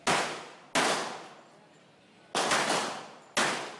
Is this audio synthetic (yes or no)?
no